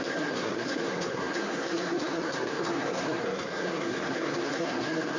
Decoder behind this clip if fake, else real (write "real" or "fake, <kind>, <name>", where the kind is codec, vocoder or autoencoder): fake, codec, SNAC